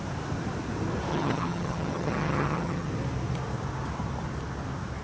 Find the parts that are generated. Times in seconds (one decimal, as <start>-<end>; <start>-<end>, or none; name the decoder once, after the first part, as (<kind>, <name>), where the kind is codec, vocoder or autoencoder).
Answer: 1.1-2.9 (vocoder, HiFi-GAN)